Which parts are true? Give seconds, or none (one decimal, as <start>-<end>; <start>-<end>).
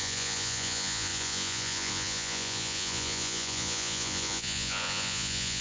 none